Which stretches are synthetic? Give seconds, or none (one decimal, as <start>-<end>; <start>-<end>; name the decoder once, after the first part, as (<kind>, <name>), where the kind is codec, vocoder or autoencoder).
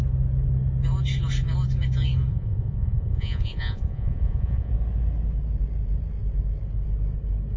2.3-4.7 (vocoder, Vocos)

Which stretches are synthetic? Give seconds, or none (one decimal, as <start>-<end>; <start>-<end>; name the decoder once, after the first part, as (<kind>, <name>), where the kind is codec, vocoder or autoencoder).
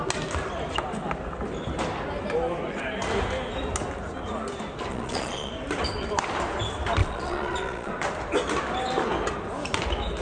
4.9-5.5 (vocoder, Vocos); 7.0-7.9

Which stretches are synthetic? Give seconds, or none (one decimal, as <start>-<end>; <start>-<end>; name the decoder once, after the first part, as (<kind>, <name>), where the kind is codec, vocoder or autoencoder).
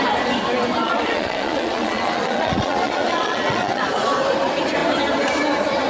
0.8-3.8 (vocoder, Vocos)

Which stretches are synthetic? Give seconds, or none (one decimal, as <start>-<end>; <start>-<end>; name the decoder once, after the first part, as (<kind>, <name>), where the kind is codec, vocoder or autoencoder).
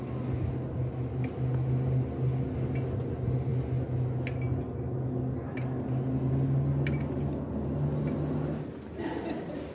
none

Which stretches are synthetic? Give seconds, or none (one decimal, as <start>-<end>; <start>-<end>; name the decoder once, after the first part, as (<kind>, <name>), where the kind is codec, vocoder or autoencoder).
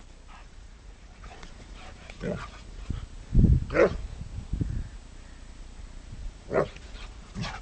0.4-2.9 (vocoder, Vocos); 6.2-7.6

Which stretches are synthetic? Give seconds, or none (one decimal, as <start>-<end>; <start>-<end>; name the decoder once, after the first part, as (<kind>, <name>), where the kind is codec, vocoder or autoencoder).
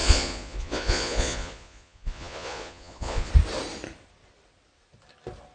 0.0-3.3 (vocoder, Vocos)